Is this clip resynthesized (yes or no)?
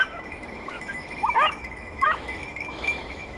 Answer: yes